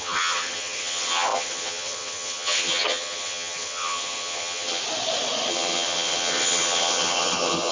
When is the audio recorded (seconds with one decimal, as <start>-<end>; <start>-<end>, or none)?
4.8-5.5